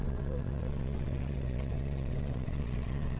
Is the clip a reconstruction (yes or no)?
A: yes